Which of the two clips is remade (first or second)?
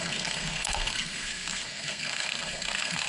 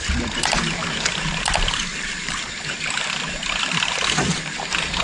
first